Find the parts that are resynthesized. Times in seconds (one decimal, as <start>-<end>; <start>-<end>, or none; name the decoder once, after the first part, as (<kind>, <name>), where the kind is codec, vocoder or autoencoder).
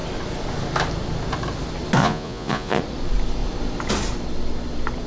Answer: 2.0-2.8 (vocoder, Vocos)